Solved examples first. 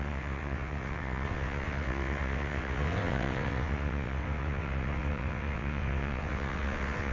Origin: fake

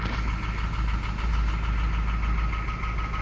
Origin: real